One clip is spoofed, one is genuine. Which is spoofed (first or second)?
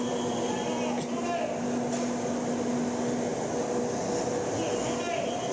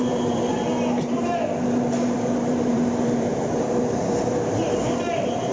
second